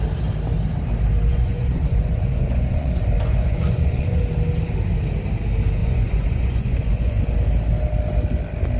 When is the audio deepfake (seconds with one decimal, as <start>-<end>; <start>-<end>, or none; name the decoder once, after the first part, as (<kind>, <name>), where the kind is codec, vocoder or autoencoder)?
1.3-4.2 (vocoder, Vocos); 5.8-7.2